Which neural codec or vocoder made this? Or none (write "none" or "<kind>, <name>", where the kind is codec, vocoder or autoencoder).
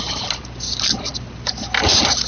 none